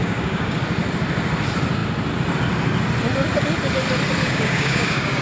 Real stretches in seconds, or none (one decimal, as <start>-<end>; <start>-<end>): 0.6-4.2